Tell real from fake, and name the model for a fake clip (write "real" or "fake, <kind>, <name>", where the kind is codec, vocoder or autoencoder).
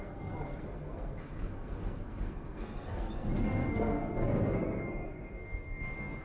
fake, codec, SNAC